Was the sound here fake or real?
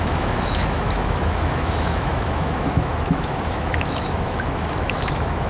fake